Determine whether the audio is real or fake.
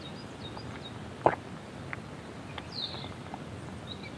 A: real